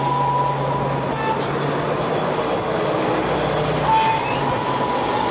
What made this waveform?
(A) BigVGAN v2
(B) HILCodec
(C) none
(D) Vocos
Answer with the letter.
C